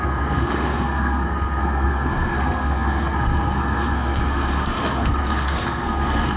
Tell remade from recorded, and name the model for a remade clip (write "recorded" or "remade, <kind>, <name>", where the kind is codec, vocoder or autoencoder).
remade, codec, SNAC